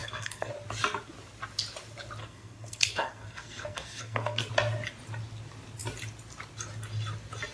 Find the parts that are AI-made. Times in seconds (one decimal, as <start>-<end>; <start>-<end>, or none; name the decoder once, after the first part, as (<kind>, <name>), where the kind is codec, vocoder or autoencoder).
0.0-0.5 (codec, SNAC); 2.2-4.5